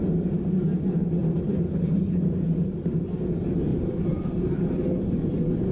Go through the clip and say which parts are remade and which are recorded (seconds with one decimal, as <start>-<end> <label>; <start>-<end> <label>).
0.0-1.2 recorded; 1.2-2.2 remade; 2.2-3.7 recorded; 3.7-4.7 remade; 4.7-5.7 recorded